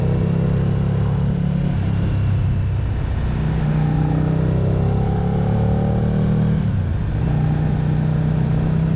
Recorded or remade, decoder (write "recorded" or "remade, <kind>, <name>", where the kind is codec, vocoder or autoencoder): recorded